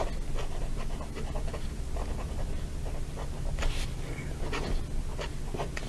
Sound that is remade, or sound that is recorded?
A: recorded